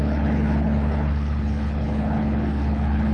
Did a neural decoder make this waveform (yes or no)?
yes